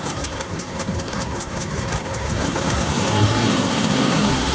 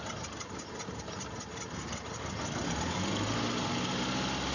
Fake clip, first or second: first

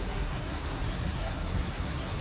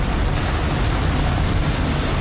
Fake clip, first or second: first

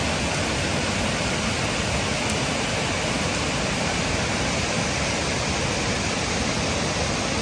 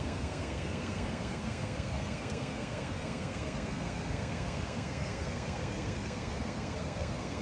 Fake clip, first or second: second